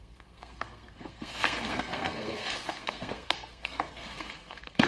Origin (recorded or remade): remade